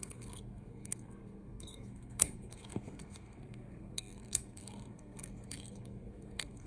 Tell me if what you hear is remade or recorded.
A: remade